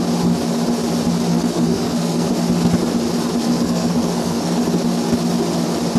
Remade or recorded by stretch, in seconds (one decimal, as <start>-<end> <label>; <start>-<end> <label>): 0.0-1.3 recorded; 1.3-2.3 remade; 2.3-3.4 recorded; 3.4-4.6 remade; 4.6-6.0 recorded